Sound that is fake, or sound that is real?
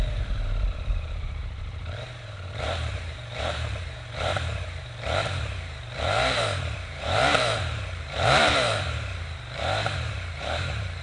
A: fake